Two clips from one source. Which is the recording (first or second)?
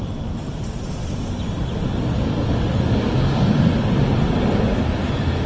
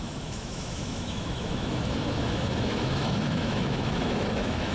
first